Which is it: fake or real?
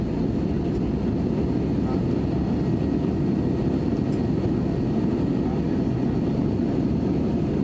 real